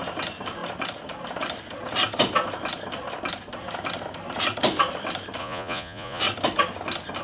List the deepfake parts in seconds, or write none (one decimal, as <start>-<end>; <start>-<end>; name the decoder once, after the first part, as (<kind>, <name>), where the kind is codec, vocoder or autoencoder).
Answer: 5.4-6.2 (vocoder, Vocos)